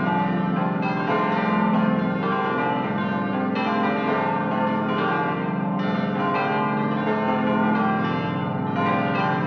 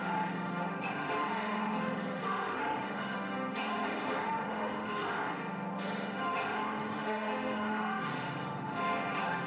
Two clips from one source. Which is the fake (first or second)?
second